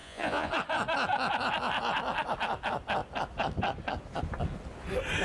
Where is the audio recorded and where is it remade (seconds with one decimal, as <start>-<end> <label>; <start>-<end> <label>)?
0.0-0.5 remade; 0.5-5.2 recorded